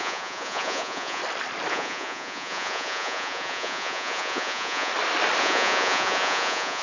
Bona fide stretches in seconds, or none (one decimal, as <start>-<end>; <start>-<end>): 1.2-1.7; 4.9-5.4